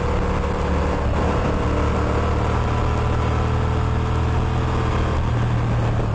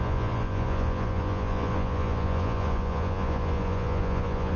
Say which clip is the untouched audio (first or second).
first